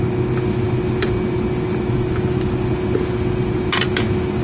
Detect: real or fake real